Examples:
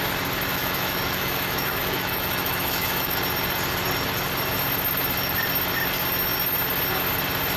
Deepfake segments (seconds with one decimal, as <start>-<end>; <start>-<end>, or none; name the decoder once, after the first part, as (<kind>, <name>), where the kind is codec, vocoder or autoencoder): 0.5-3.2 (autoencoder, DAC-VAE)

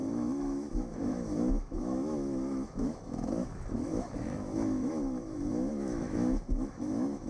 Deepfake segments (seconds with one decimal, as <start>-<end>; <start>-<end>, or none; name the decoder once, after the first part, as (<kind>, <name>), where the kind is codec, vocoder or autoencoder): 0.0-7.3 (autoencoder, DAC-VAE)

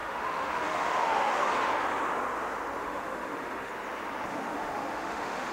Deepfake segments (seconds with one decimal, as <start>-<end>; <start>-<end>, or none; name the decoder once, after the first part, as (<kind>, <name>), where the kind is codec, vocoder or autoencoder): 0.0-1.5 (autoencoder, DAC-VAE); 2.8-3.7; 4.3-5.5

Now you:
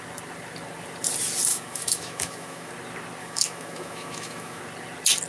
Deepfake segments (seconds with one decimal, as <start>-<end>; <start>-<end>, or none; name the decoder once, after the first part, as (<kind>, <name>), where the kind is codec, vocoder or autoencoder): 1.5-2.7 (autoencoder, DAC-VAE); 3.2-4.6